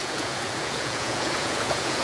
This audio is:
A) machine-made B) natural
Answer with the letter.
A